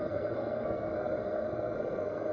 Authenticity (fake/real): fake